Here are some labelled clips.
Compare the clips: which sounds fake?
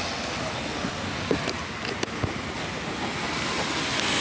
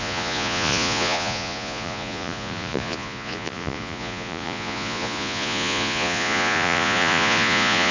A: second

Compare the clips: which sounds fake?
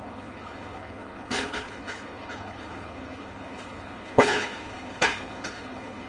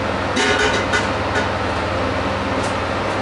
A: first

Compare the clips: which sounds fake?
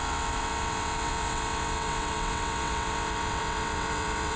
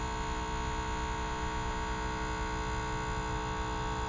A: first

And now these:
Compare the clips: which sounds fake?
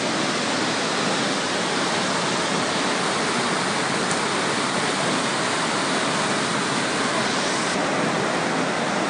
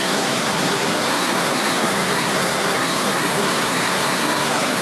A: second